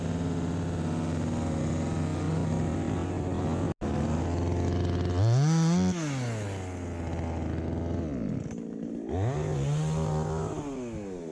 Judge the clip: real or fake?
real